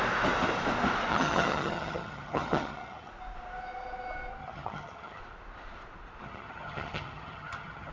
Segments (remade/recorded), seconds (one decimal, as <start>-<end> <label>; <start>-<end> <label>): 0.0-1.1 recorded; 1.1-3.1 remade; 3.1-4.4 recorded; 4.4-5.2 remade; 5.2-6.2 recorded; 6.2-7.9 remade